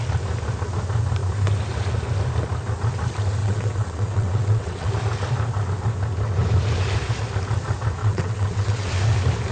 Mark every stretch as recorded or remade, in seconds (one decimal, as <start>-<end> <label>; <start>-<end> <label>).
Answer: 0.0-3.4 recorded; 3.4-4.9 remade; 4.9-8.0 recorded; 8.0-8.9 remade; 8.9-9.5 recorded